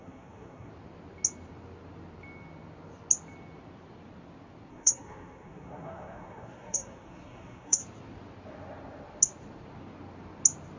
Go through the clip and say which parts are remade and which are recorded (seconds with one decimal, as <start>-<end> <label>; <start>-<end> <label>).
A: 0.0-0.7 remade; 0.7-4.7 recorded; 4.7-7.8 remade; 7.8-10.8 recorded